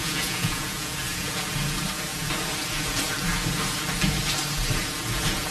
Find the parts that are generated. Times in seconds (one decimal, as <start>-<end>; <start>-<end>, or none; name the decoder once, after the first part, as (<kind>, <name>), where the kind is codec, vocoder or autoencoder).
0.0-0.9 (vocoder, Vocos)